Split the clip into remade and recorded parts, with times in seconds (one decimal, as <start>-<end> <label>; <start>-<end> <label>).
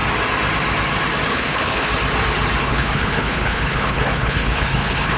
0.0-1.3 recorded; 1.3-1.9 remade; 1.9-2.6 recorded; 2.6-5.2 remade